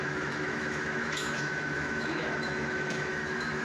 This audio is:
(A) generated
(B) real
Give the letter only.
A